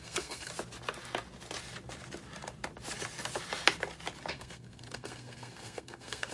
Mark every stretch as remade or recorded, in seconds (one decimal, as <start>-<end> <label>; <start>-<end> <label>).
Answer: 0.0-0.5 remade; 0.5-4.3 recorded; 4.3-6.3 remade